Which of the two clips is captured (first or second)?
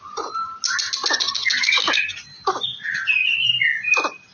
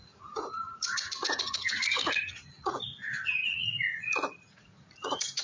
first